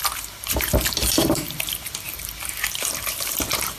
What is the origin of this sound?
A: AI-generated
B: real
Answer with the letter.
A